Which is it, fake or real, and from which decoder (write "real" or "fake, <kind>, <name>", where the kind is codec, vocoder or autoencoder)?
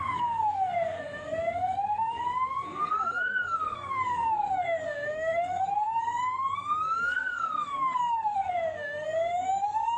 fake, codec, SNAC